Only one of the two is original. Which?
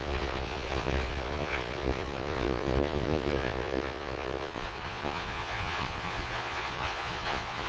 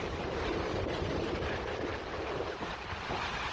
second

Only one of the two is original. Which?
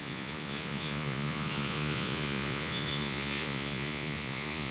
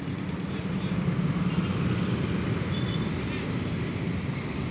second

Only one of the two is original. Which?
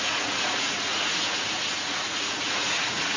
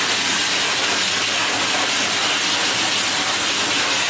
second